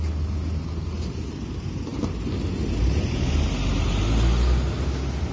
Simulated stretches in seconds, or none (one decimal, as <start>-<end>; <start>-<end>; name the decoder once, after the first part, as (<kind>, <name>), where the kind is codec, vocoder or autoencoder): none